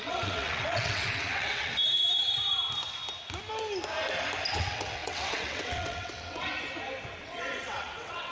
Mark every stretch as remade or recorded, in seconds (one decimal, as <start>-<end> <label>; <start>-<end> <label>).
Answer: 0.0-2.5 remade; 2.5-4.5 recorded; 4.5-6.5 remade; 6.5-7.2 recorded; 7.2-8.3 remade